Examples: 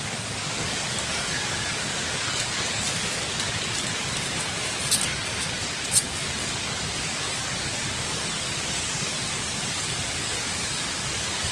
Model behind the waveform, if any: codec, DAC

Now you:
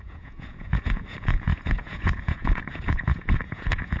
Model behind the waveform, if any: vocoder, Vocos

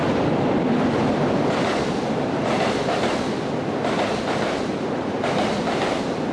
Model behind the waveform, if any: none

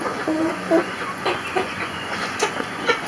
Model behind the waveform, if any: vocoder, Vocos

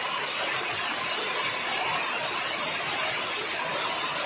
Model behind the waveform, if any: none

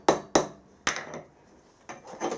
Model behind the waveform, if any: none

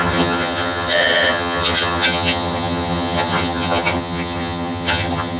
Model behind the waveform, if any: vocoder, HiFi-GAN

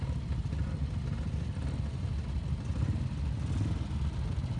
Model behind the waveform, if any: none